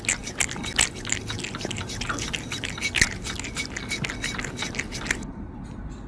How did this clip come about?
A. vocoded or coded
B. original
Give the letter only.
B